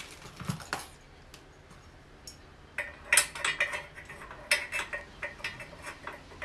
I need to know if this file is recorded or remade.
recorded